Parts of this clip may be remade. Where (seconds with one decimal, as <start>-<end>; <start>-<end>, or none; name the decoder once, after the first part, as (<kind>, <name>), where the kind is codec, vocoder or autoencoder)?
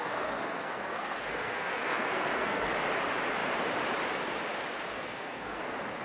0.0-2.7 (codec, SNAC); 4.9-5.6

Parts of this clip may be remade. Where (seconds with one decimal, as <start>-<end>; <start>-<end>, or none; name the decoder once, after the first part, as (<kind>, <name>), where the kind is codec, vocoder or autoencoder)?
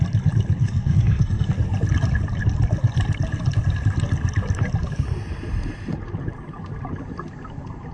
0.6-1.5 (codec, SNAC)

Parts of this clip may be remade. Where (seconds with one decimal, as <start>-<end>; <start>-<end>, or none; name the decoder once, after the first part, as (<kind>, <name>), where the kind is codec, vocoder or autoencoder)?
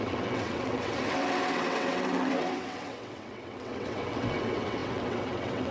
0.0-5.7 (vocoder, WaveNeXt)